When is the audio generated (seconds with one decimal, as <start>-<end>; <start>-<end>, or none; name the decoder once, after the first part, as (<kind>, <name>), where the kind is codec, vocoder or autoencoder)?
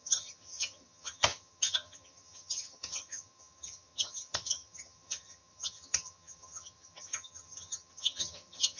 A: 0.0-8.8 (vocoder, HiFi-GAN)